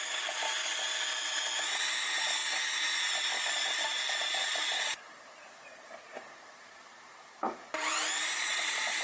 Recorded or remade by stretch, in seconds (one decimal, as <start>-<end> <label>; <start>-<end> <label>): 0.0-4.4 recorded; 4.4-9.0 remade